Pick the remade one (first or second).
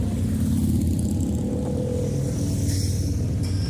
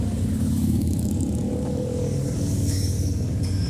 second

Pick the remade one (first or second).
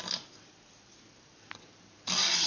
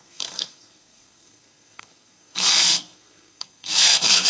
second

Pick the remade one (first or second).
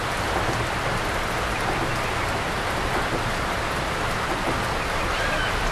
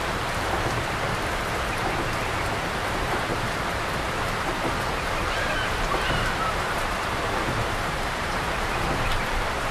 second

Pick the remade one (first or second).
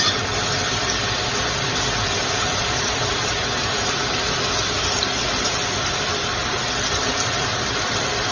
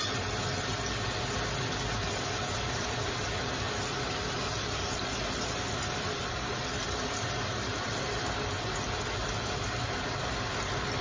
first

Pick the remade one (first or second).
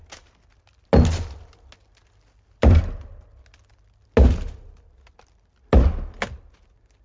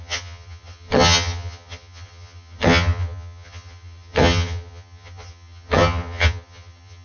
second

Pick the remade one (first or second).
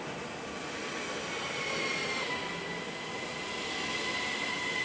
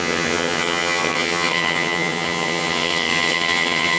second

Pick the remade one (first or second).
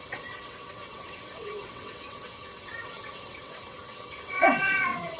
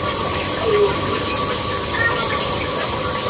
first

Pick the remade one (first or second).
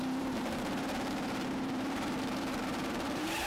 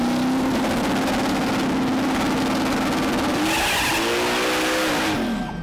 first